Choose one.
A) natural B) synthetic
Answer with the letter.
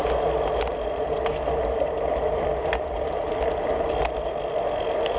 A